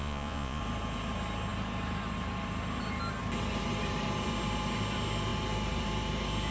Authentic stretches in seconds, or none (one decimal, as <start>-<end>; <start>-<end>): 0.6-6.5